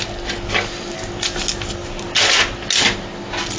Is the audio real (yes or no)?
yes